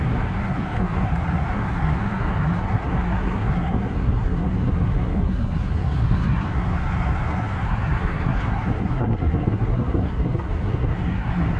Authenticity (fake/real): fake